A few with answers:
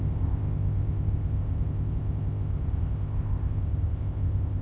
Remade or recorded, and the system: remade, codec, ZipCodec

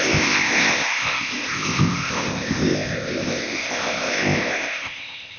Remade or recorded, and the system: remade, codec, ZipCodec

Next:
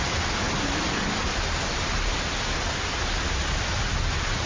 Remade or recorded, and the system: recorded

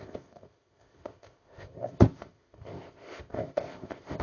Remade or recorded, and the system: remade, codec, ZipCodec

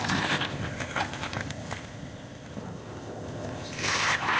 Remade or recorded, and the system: remade, codec, ZipCodec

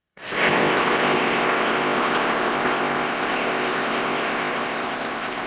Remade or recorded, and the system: remade, codec, ZipCodec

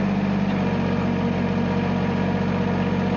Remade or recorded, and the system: recorded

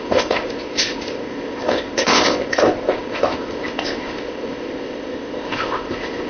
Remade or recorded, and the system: remade, codec, ZipCodec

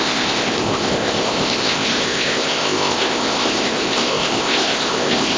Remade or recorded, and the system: remade, codec, ZipCodec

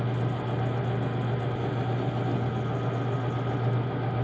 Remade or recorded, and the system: recorded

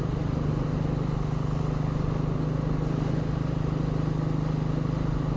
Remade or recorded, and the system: recorded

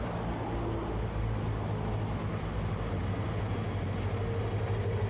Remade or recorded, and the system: recorded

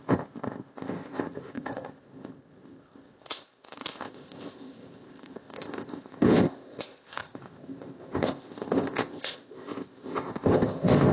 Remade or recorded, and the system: remade, codec, ZipCodec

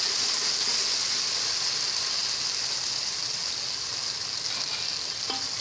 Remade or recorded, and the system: recorded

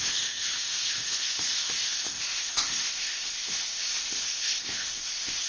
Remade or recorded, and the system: remade, codec, ZipCodec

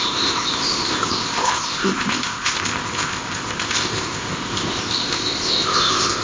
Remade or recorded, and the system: remade, codec, ZipCodec